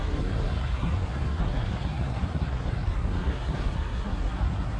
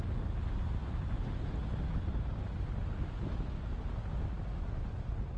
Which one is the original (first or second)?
second